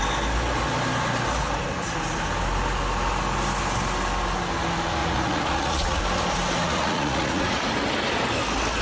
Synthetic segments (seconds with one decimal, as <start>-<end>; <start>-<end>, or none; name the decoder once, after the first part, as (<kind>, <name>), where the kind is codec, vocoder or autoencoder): 5.0-6.0 (vocoder, Vocos); 6.6-7.6